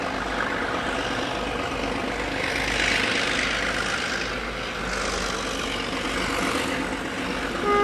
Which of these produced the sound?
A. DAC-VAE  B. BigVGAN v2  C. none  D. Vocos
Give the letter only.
C